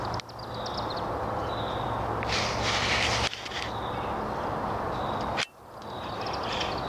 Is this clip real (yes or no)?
yes